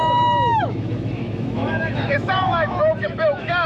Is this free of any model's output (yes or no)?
no